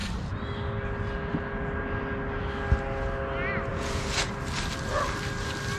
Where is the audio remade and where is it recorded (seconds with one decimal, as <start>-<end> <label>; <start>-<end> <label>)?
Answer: 0.0-3.7 recorded; 3.7-4.3 remade; 4.3-5.8 recorded